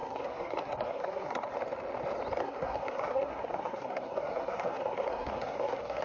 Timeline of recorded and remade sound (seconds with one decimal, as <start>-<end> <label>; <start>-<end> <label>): 0.0-1.5 remade; 1.5-2.4 recorded; 2.4-6.0 remade